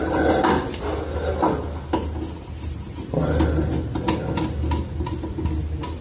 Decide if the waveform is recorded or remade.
recorded